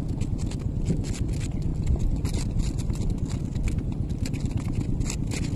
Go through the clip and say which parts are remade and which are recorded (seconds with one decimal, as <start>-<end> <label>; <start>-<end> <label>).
0.0-5.6 recorded